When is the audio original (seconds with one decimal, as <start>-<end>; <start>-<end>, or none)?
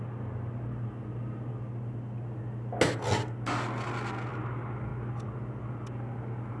0.0-6.6